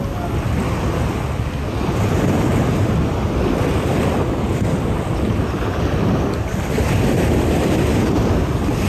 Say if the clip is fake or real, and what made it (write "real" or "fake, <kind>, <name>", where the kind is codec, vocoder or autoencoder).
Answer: real